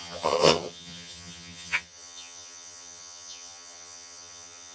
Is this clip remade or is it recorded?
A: remade